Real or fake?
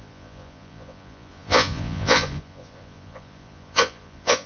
fake